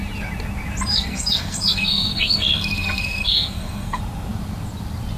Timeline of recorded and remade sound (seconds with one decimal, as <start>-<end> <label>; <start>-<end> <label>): 0.0-0.9 recorded; 0.9-4.0 remade; 4.0-5.2 recorded